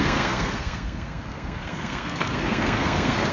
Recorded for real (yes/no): no